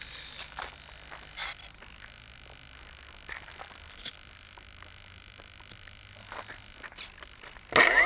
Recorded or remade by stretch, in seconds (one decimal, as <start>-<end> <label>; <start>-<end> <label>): 0.0-8.1 recorded